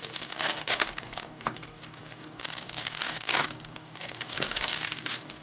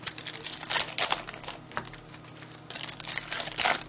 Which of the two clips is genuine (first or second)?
second